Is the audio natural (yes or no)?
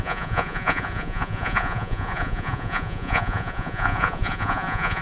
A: no